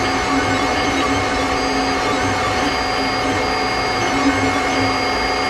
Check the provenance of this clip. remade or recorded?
recorded